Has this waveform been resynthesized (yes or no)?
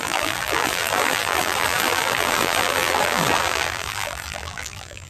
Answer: yes